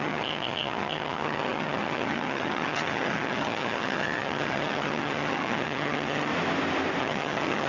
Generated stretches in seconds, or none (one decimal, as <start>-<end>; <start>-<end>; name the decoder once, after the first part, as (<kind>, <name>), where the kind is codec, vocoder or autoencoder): 0.0-6.3 (vocoder, HiFi-GAN); 7.0-7.7